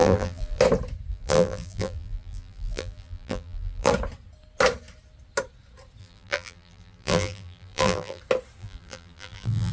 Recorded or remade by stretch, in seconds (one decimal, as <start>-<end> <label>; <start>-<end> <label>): 0.0-0.6 remade; 0.6-1.1 recorded; 1.1-3.9 remade; 3.9-6.0 recorded; 6.0-8.2 remade; 8.2-8.6 recorded; 8.6-9.7 remade